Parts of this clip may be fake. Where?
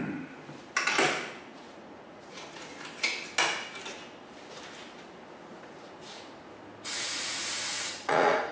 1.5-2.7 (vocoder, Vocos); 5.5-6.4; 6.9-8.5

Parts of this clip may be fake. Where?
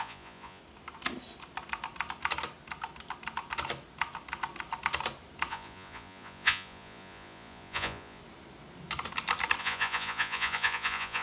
0.0-0.6 (vocoder, Vocos); 5.5-8.2; 9.6-11.2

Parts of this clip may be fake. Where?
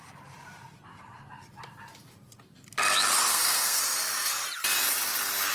3.3-3.8 (codec, SNAC)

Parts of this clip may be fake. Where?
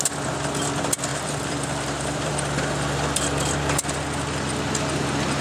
1.1-2.3 (vocoder, BigVGAN v2)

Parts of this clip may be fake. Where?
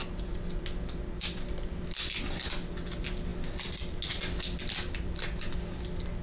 none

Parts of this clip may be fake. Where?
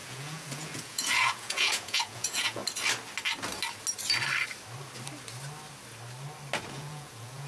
0.0-2.6 (vocoder, Vocos); 6.7-7.5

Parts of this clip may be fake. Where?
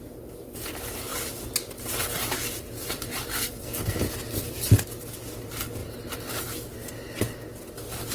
3.3-4.0 (codec, SNAC)